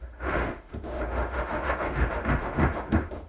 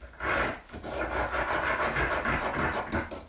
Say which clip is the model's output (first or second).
first